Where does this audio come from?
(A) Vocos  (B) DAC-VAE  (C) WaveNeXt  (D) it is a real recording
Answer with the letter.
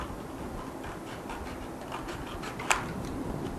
D